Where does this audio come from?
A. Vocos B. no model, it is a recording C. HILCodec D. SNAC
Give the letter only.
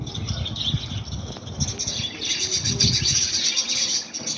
B